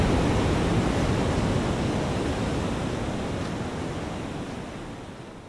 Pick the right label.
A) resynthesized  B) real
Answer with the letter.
B